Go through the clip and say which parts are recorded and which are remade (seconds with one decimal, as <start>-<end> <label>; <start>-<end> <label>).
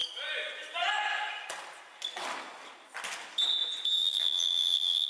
0.0-4.0 recorded; 4.0-5.1 remade